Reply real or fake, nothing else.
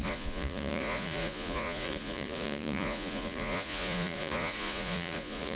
fake